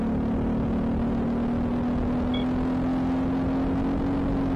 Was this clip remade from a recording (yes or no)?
no